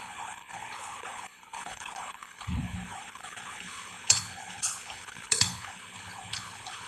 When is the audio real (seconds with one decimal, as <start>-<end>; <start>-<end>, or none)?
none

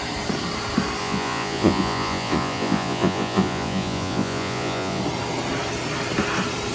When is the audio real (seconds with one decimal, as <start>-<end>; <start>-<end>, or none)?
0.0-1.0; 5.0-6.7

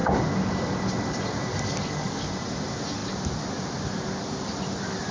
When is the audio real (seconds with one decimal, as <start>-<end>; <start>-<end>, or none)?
0.0-1.5; 2.3-5.1